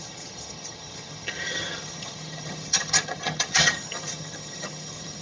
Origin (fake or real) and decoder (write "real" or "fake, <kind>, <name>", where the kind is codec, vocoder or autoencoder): fake, vocoder, HiFi-GAN